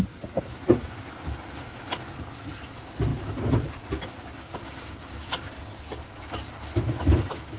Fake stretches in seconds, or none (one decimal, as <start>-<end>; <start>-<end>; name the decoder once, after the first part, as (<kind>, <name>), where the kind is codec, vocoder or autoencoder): 4.6-5.5 (codec, DAC)